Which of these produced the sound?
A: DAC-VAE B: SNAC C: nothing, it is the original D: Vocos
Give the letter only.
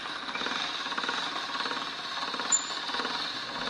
C